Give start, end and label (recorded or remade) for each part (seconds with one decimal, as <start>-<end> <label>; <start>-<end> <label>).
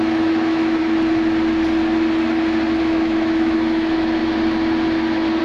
0.0-0.8 remade; 0.8-2.8 recorded; 2.8-4.2 remade; 4.2-5.4 recorded